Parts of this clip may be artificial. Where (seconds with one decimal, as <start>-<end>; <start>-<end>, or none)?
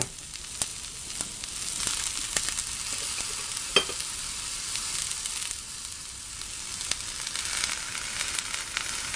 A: none